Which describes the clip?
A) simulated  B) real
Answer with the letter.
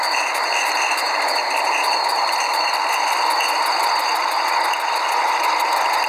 B